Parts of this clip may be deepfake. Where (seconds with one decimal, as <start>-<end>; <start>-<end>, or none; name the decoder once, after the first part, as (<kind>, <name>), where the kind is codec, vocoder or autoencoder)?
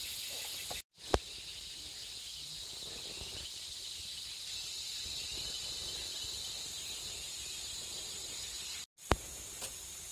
none